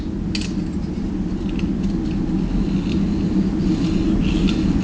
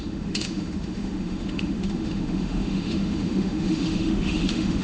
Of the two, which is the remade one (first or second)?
second